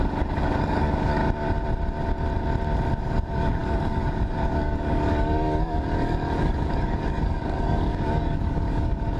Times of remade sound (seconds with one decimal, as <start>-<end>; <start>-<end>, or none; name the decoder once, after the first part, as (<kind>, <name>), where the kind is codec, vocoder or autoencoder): 0.0-1.2 (codec, DAC); 3.0-9.2